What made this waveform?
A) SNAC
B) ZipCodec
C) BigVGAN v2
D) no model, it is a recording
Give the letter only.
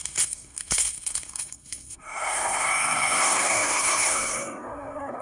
A